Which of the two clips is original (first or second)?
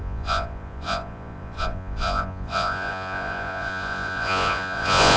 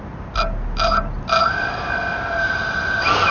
second